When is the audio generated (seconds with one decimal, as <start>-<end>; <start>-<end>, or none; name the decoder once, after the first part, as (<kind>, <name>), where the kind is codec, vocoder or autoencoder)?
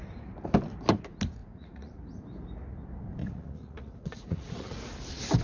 1.4-2.0 (vocoder, Vocos); 3.2-4.8